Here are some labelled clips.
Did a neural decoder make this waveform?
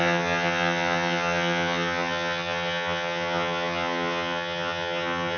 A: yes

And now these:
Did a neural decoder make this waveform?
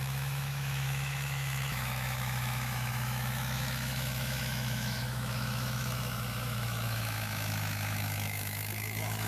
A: yes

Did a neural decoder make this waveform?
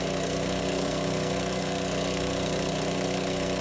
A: yes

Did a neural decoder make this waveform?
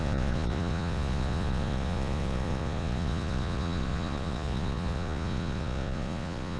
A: yes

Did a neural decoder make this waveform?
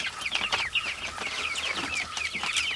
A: no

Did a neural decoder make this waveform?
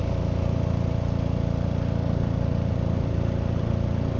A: no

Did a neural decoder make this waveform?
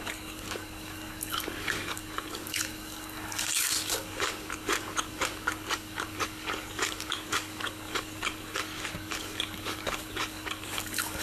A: yes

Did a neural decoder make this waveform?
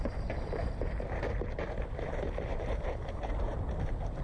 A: yes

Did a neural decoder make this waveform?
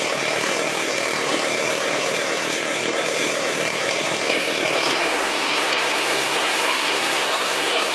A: yes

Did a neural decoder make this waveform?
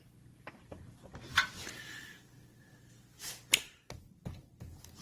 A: no